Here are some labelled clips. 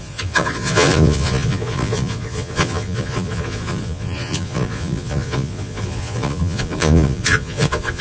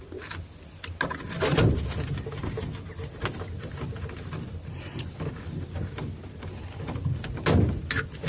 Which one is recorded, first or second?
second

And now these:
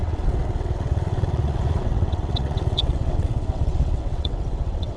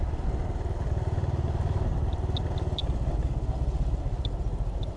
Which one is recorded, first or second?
second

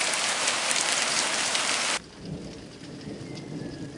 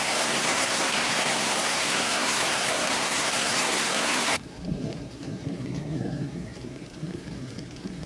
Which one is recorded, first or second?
first